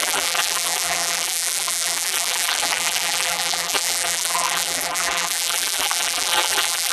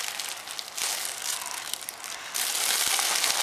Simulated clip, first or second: first